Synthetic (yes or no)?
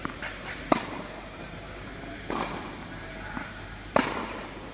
yes